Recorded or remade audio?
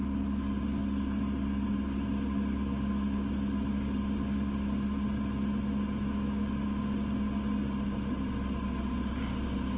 recorded